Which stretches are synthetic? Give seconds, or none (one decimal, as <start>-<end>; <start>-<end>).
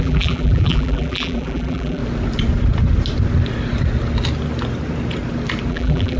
0.0-2.0; 5.7-6.2